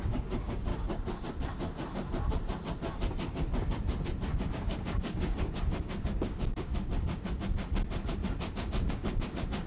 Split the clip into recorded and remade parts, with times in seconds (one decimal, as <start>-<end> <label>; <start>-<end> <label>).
0.0-0.7 remade; 0.7-4.5 recorded; 4.5-6.7 remade; 6.7-8.9 recorded; 8.9-9.7 remade